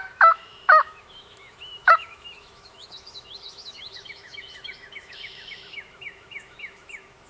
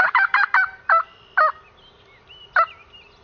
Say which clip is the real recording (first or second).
second